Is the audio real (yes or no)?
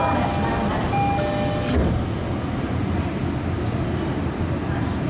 yes